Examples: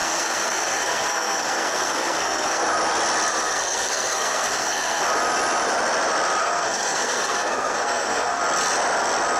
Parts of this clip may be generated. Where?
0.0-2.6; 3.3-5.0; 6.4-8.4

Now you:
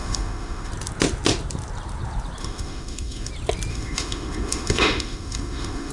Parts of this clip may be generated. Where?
0.0-0.7; 2.4-3.3; 3.7-5.9